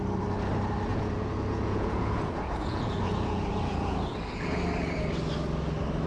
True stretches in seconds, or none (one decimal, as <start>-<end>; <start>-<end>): 0.0-0.9; 4.6-6.1